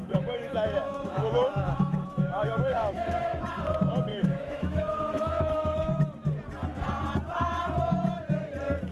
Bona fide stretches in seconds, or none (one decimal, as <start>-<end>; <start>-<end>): 3.4-4.1; 5.9-8.9